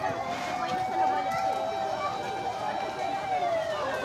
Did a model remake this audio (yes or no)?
no